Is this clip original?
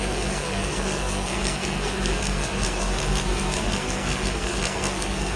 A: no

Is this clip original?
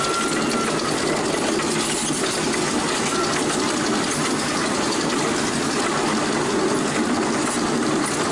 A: yes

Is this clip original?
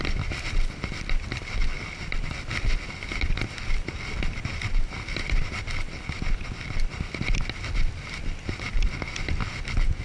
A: yes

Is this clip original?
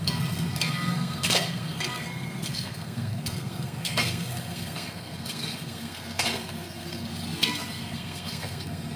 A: no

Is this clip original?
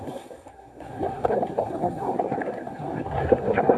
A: no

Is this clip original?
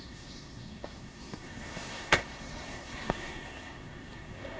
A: no